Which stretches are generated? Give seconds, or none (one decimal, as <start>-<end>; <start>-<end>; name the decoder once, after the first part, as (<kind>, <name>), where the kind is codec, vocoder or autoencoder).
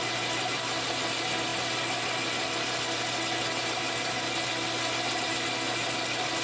none